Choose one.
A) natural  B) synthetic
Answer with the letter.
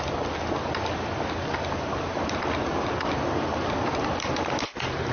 A